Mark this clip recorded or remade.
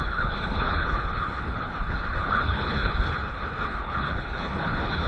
remade